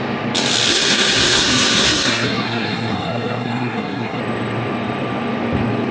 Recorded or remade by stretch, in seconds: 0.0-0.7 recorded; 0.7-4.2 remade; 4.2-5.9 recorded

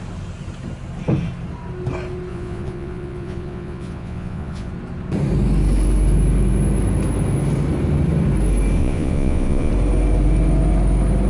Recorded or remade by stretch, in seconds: 0.0-2.3 recorded; 2.3-4.7 remade; 4.7-8.8 recorded; 8.8-9.7 remade; 9.7-11.3 recorded